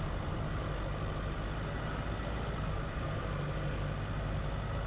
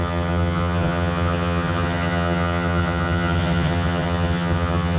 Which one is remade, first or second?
second